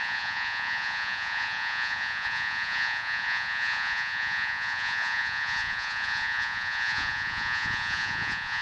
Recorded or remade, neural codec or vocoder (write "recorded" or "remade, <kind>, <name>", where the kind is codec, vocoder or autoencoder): remade, vocoder, Vocos